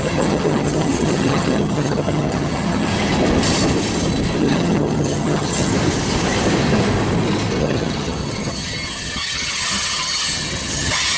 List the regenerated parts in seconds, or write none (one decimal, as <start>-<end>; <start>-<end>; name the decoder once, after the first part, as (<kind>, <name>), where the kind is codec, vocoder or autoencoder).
0.0-2.9 (vocoder, HiFi-GAN); 4.4-5.7; 7.6-11.2